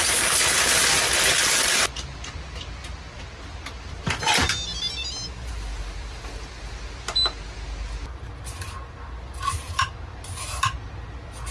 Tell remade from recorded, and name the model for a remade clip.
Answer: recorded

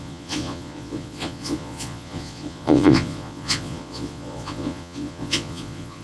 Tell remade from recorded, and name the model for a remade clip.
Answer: remade, vocoder, Vocos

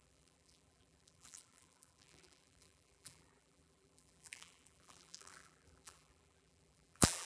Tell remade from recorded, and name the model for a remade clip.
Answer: remade, vocoder, BigVGAN v2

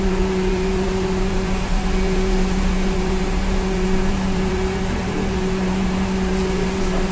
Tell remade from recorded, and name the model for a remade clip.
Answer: remade, vocoder, BigVGAN v2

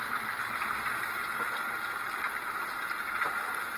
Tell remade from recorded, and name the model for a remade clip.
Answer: recorded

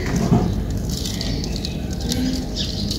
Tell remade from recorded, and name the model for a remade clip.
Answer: recorded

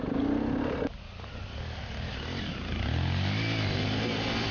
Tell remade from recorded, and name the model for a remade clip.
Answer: recorded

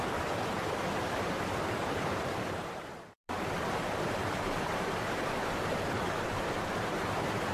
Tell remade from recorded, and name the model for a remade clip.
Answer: remade, vocoder, BigVGAN v2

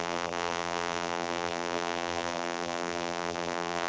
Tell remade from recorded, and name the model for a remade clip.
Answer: remade, vocoder, BigVGAN v2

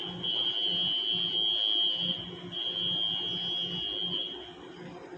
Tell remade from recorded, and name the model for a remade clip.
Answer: recorded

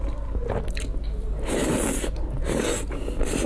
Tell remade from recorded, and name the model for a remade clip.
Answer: recorded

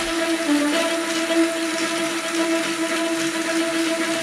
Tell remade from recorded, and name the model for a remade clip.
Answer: recorded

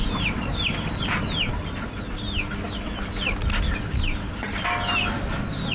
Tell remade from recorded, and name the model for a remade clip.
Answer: recorded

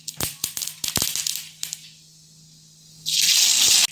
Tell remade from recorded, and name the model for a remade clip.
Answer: recorded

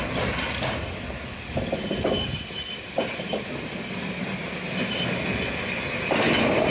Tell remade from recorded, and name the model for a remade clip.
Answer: recorded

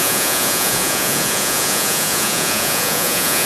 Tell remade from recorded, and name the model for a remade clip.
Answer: remade, vocoder, Vocos